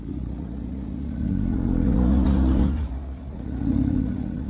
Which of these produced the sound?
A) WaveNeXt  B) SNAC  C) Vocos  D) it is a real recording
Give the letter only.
C